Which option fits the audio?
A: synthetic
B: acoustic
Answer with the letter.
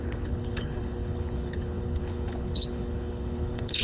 A